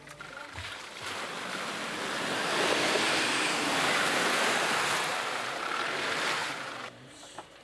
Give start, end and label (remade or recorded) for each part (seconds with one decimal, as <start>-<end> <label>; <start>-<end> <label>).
0.0-0.9 remade; 0.9-5.1 recorded; 5.1-7.6 remade